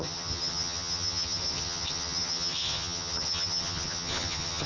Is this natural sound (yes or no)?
no